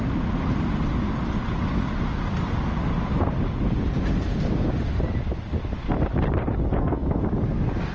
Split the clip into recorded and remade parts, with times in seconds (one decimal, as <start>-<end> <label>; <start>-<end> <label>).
0.0-6.7 recorded; 6.7-7.2 remade; 7.2-7.9 recorded